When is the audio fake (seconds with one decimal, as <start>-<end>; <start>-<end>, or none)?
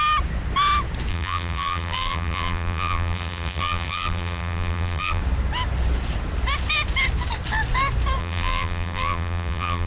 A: 1.1-5.2; 8.2-9.9